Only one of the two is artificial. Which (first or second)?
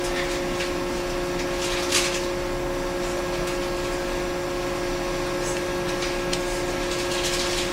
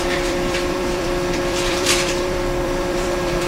second